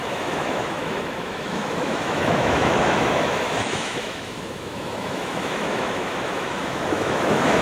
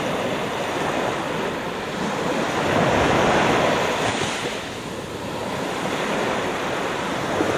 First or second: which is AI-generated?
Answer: first